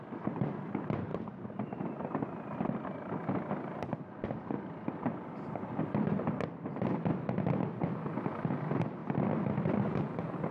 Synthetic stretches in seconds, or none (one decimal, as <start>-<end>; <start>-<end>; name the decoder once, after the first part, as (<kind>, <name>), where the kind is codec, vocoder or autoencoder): none